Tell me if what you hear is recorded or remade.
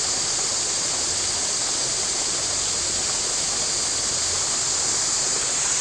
recorded